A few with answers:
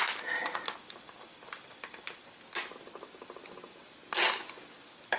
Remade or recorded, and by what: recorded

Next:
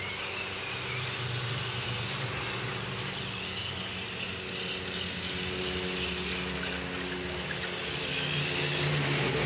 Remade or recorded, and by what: recorded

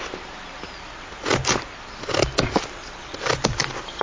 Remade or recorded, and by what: recorded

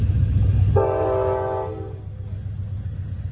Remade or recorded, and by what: recorded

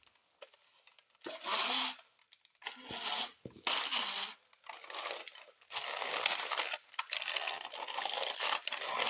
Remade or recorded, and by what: recorded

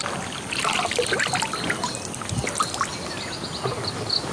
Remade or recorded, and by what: recorded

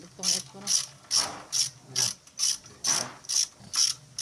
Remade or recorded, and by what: recorded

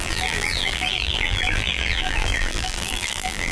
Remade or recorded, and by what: remade, vocoder, BigVGAN v2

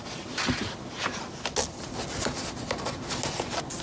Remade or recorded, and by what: recorded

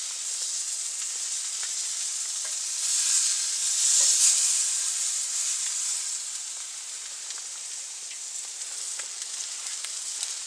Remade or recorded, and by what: recorded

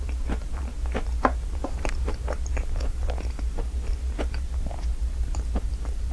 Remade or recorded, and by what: remade, vocoder, BigVGAN v2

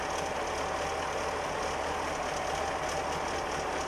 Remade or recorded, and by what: recorded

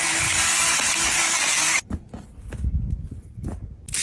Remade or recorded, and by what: recorded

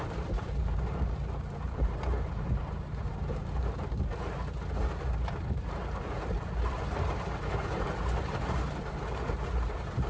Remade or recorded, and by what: remade, vocoder, BigVGAN v2